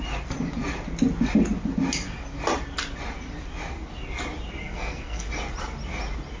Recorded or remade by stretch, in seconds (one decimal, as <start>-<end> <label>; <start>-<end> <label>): 0.0-4.6 recorded; 4.6-5.3 remade; 5.3-6.4 recorded